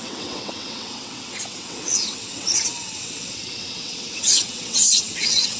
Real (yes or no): no